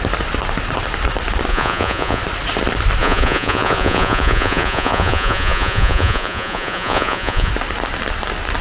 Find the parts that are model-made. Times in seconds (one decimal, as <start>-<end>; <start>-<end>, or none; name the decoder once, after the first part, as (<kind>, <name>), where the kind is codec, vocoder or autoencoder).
1.5-2.2 (vocoder, Vocos); 3.0-7.5